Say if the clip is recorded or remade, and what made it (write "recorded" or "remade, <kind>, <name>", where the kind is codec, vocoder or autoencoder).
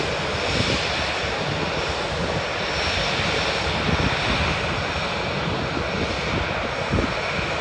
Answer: recorded